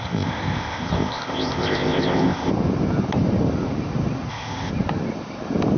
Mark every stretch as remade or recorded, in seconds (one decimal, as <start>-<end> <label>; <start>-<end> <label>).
0.0-2.5 remade; 2.5-4.3 recorded; 4.3-4.7 remade; 4.7-5.8 recorded